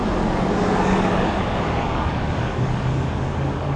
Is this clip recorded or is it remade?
remade